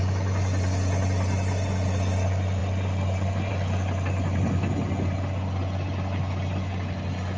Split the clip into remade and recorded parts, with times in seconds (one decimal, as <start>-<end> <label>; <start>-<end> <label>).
0.0-7.4 recorded